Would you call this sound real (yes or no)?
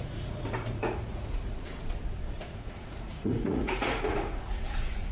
no